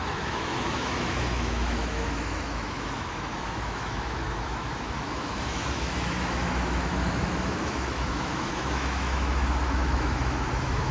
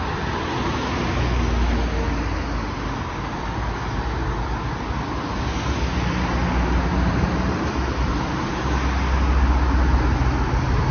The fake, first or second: first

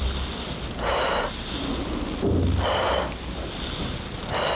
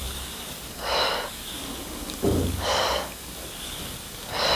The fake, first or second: second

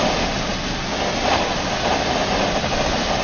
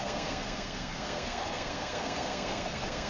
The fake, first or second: second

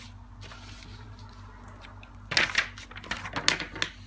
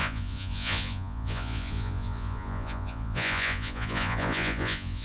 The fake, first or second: second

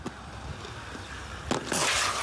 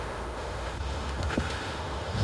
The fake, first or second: second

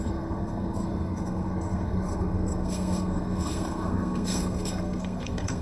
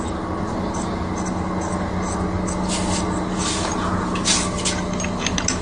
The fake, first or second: first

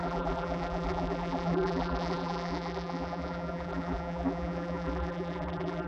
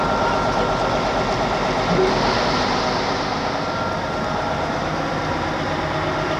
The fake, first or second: first